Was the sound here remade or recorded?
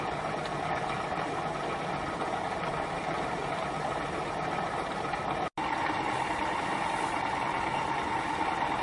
recorded